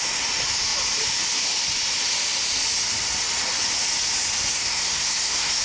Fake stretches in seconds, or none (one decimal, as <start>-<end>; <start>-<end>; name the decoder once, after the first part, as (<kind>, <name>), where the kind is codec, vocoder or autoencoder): 4.5-5.6 (codec, SNAC)

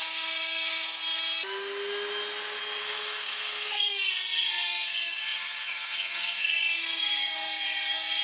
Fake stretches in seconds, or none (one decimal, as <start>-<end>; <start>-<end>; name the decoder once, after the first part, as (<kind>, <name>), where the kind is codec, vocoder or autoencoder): 0.0-1.0 (codec, SNAC); 2.8-8.2

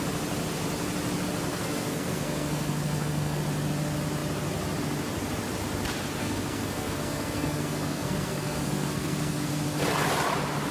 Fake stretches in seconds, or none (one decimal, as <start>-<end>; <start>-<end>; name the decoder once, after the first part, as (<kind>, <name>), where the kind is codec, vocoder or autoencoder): 1.5-3.4 (codec, SNAC); 6.2-9.6

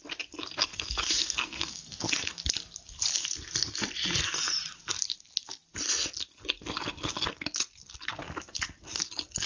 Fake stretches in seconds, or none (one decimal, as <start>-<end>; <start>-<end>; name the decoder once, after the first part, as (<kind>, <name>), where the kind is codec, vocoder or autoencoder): 0.7-2.4 (codec, SNAC)

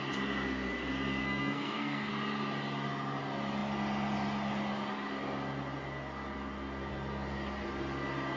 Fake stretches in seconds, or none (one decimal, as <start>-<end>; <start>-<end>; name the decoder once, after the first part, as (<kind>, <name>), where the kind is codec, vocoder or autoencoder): 1.2-2.1 (codec, SNAC)

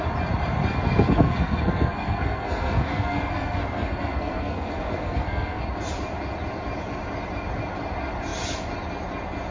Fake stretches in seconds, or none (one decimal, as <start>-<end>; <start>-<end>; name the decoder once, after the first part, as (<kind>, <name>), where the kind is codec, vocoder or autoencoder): 0.7-5.6 (codec, SNAC)

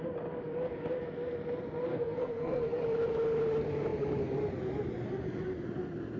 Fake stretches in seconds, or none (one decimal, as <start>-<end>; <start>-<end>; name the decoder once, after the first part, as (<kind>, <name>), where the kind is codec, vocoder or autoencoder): 1.9-2.8 (codec, SNAC)